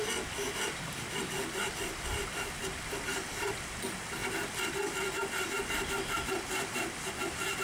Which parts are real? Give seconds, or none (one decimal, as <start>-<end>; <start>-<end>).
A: 0.0-7.6